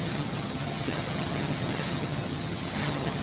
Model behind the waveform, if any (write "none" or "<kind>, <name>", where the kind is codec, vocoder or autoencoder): vocoder, HiFi-GAN